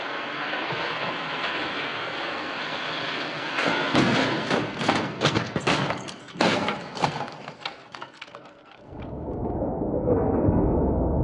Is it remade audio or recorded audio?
remade